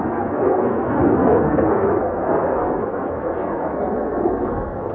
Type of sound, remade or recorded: remade